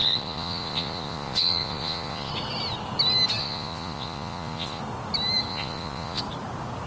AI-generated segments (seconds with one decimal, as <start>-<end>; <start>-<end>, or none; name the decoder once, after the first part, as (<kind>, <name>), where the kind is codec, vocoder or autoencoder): 0.0-2.3 (vocoder, Vocos); 3.4-4.8; 5.5-6.2